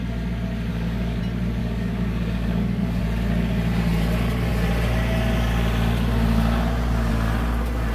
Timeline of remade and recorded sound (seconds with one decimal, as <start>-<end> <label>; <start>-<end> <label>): 0.0-0.7 recorded; 0.7-1.2 remade; 1.2-1.6 recorded; 1.6-3.0 remade; 3.0-7.9 recorded